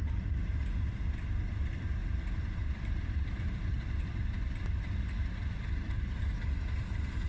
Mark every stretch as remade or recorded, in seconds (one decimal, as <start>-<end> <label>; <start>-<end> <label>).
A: 0.0-2.0 recorded; 2.0-6.4 remade; 6.4-7.3 recorded